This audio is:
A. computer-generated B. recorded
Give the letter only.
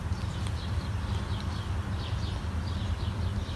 B